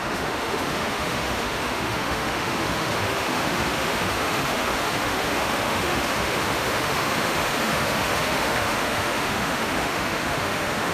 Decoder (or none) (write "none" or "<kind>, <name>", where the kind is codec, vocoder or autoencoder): autoencoder, DAC-VAE